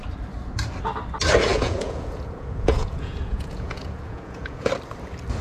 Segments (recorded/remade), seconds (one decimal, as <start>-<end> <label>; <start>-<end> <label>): 0.0-1.5 recorded; 1.5-4.7 remade; 4.7-5.4 recorded